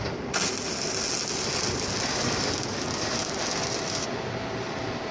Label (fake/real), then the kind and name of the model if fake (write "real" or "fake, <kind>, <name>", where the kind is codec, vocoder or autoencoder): real